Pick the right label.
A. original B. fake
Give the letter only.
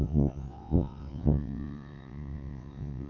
B